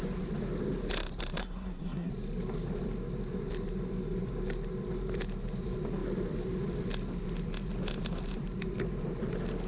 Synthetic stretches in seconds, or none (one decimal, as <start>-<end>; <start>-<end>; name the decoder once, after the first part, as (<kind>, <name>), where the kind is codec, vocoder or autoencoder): 1.4-2.1 (codec, SNAC)